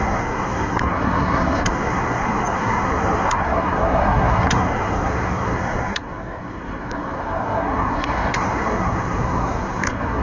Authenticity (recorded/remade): remade